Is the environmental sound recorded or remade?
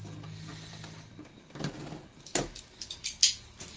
recorded